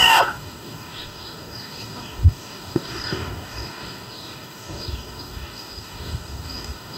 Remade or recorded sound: remade